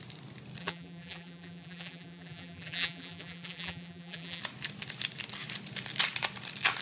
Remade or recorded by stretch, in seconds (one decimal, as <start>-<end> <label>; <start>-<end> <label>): 0.0-0.6 recorded; 0.6-4.4 remade; 4.4-6.8 recorded